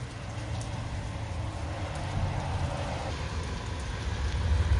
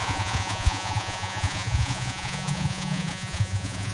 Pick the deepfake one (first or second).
second